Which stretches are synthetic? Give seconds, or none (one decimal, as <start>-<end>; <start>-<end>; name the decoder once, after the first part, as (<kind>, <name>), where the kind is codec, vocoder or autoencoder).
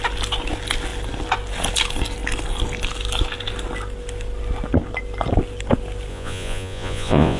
6.1-7.4 (vocoder, Vocos)